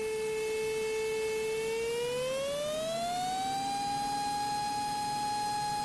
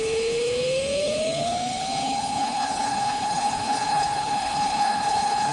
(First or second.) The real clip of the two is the first